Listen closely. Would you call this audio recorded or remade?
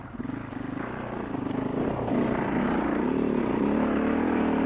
recorded